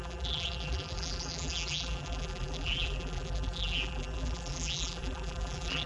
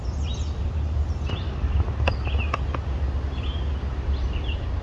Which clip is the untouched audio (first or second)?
second